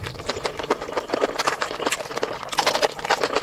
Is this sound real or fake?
real